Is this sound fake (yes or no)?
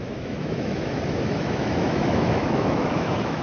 yes